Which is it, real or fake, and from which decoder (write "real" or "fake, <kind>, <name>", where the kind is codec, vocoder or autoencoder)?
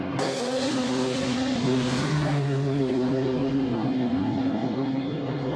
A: fake, codec, SNAC